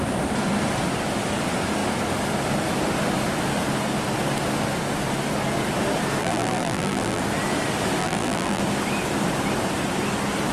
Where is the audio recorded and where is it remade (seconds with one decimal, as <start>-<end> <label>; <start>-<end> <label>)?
0.0-6.2 recorded; 6.2-7.2 remade; 7.2-8.0 recorded; 8.0-8.6 remade; 8.6-10.5 recorded